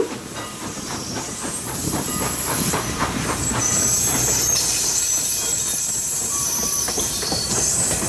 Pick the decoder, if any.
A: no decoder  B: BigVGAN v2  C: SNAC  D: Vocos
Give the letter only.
B